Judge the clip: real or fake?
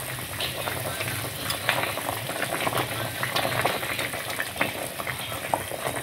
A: real